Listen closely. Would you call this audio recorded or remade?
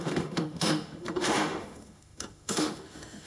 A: remade